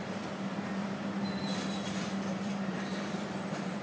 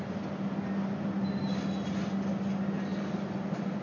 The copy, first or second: first